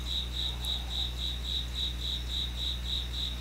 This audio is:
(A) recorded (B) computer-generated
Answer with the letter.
A